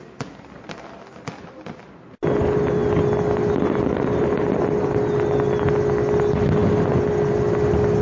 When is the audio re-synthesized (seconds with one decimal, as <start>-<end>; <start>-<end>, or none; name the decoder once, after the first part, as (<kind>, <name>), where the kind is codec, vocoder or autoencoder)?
none